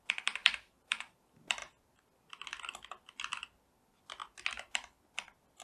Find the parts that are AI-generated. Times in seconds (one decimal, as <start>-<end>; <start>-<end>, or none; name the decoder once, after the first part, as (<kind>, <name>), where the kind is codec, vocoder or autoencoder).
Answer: 0.4-1.1 (vocoder, BigVGAN v2)